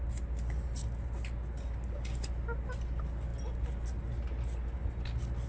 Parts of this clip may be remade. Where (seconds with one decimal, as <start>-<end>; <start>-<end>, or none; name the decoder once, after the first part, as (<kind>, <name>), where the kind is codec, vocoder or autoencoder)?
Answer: none